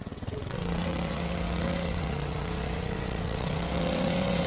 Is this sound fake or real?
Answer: fake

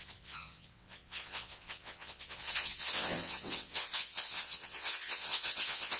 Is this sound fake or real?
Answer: fake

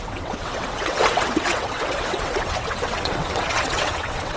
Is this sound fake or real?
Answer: fake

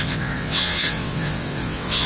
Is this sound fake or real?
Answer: fake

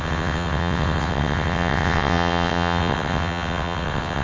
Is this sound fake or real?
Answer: fake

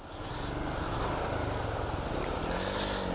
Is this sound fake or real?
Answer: real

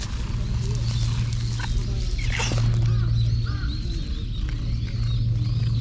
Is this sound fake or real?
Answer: real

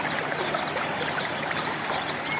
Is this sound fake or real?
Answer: real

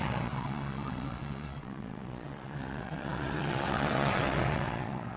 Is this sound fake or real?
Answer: fake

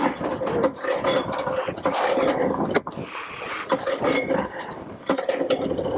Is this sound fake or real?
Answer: real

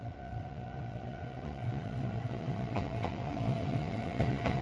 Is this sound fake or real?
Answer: fake